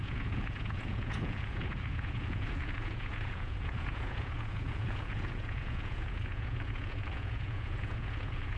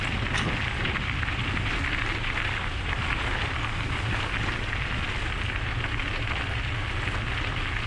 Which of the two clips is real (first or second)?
second